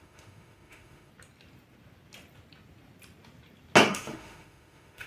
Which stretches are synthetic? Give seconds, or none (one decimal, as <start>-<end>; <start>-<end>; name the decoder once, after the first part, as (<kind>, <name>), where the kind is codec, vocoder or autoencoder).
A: 0.0-1.1 (autoencoder, DAC-VAE); 3.9-5.1